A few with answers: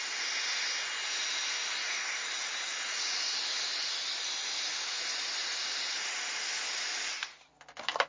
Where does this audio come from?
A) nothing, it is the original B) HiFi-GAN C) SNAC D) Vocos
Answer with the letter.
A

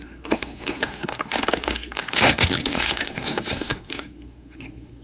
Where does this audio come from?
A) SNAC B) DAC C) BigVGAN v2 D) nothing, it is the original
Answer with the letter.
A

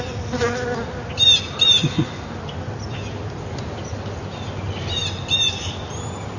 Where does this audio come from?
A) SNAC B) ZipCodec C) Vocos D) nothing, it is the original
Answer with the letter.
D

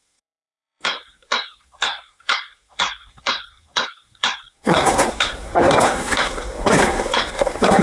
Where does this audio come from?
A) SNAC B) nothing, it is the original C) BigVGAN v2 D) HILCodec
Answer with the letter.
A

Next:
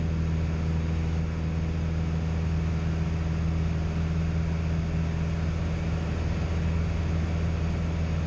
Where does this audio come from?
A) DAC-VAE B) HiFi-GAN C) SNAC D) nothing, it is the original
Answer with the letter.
D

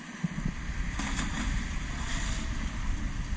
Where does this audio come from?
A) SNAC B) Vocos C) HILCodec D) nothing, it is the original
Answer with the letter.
D